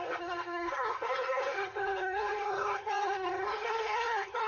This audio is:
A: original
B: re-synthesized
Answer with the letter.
B